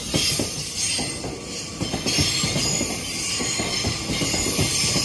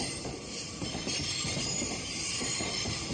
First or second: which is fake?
second